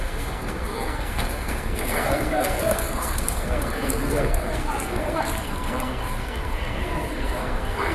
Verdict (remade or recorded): remade